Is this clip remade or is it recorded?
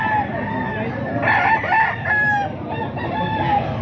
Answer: recorded